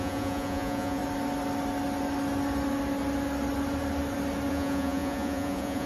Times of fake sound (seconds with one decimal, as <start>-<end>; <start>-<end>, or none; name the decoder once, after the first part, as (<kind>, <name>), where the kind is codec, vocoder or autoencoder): 0.0-1.0 (vocoder, Vocos); 4.5-5.9